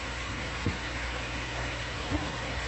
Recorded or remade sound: remade